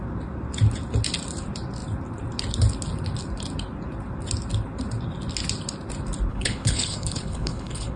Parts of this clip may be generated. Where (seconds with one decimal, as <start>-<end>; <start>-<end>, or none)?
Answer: 6.3-8.0